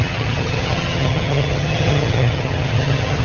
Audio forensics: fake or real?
fake